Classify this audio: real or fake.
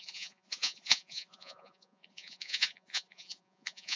fake